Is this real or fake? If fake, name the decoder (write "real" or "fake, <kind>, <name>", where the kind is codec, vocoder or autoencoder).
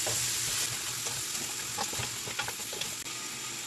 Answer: real